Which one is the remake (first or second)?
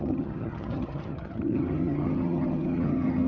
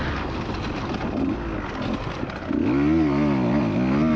first